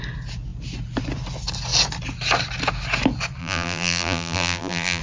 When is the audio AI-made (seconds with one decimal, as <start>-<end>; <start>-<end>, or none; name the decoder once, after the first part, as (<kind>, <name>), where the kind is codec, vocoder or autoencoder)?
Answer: 3.4-5.0 (vocoder, BigVGAN v2)